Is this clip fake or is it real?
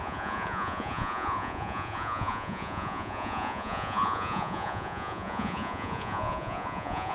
fake